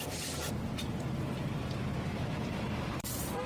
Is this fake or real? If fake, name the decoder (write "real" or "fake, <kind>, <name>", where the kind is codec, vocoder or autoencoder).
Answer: fake, vocoder, BigVGAN v2